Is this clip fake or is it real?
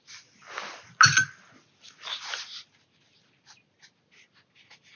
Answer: real